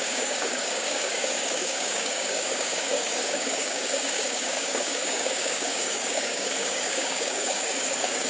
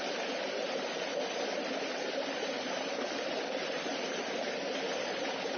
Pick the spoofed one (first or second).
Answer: first